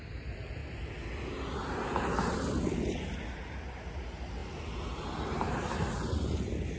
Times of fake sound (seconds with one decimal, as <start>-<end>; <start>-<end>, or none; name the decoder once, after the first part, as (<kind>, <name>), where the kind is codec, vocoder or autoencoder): none